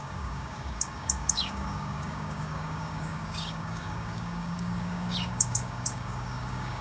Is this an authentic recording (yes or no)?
no